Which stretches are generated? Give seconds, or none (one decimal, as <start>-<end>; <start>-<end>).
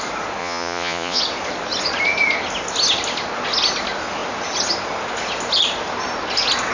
0.4-1.2